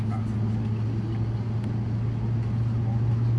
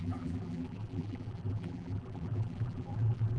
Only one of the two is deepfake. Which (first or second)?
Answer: second